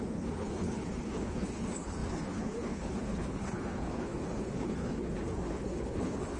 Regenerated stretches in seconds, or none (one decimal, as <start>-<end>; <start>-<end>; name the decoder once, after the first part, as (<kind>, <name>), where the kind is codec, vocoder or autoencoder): 0.0-6.4 (codec, HILCodec)